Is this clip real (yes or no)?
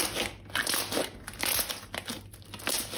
yes